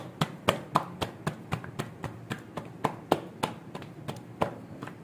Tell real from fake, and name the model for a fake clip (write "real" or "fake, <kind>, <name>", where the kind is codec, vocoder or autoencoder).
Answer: real